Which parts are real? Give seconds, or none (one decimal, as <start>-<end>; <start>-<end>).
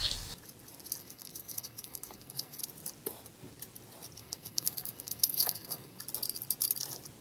0.0-1.0; 2.6-4.2; 6.0-7.2